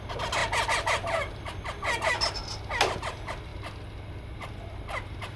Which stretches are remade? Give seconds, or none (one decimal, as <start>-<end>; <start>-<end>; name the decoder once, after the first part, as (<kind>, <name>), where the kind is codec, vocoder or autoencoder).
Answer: none